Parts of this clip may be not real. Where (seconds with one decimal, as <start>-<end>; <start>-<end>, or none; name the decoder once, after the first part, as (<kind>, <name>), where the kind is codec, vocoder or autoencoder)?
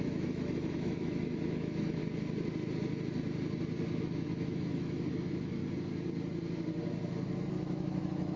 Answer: 0.0-2.0 (autoencoder, DAC-VAE); 4.0-5.6; 7.5-8.4